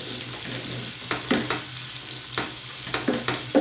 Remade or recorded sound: recorded